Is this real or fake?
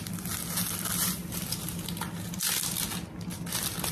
real